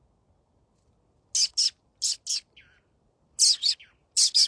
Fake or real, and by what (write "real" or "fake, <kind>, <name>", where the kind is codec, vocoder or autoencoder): real